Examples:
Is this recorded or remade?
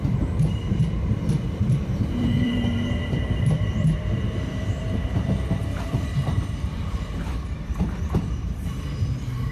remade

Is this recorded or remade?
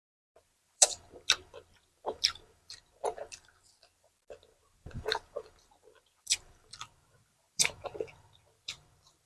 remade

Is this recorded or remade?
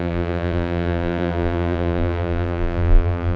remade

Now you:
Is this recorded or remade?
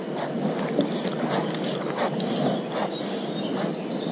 recorded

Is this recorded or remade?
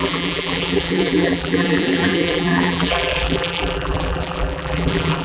remade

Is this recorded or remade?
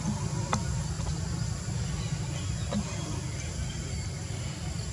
recorded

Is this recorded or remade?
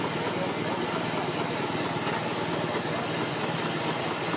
recorded